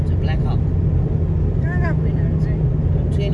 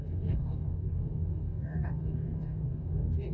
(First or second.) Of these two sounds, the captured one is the first